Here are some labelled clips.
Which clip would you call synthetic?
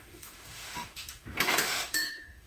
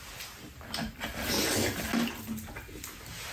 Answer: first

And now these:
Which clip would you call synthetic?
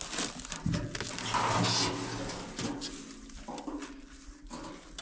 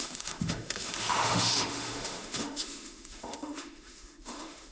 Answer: second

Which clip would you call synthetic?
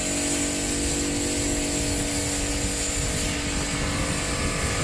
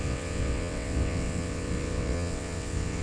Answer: second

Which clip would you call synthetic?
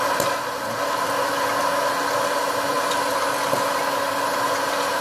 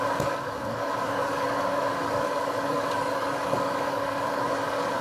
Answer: second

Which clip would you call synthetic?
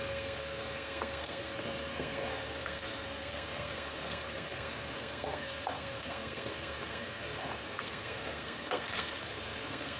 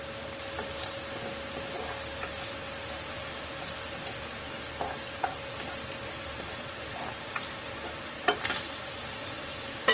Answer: first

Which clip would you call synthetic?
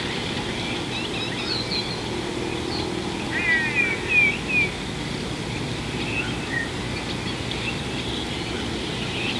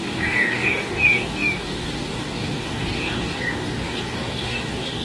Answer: second